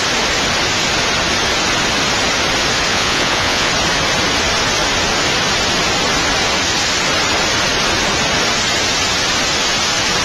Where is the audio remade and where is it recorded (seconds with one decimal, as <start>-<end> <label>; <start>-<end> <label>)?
0.0-2.9 recorded; 2.9-3.7 remade; 3.7-10.2 recorded